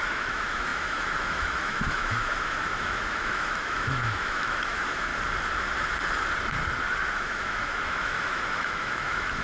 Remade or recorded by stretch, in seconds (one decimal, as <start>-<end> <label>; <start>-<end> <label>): 0.0-5.1 remade; 5.1-7.1 recorded; 7.1-9.4 remade